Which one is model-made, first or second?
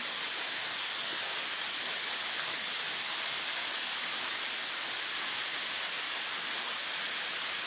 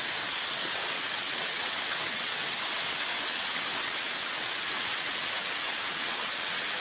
second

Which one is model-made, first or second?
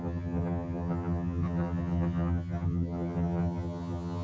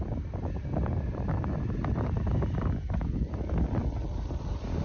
first